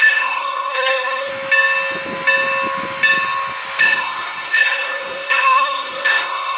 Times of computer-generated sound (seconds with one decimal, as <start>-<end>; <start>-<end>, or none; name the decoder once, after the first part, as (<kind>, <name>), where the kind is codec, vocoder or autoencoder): 0.0-1.3 (codec, SNAC); 3.8-6.6

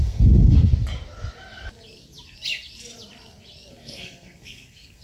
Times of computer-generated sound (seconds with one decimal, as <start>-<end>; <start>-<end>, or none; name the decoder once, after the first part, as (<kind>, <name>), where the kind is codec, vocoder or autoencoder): 0.0-0.7 (codec, SNAC); 3.7-5.0